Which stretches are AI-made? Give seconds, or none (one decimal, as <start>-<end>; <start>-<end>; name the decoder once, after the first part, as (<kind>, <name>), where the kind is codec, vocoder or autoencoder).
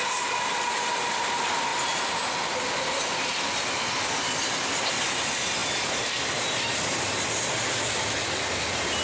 none